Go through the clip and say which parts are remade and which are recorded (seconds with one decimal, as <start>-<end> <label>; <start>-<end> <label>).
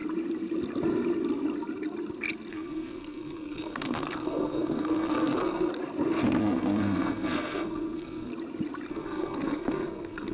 0.0-2.5 recorded; 2.5-5.7 remade; 5.7-6.4 recorded; 6.4-8.3 remade; 8.3-8.9 recorded; 8.9-10.3 remade